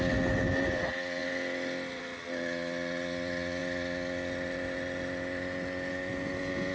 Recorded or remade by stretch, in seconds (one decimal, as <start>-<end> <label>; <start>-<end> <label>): 0.0-6.7 recorded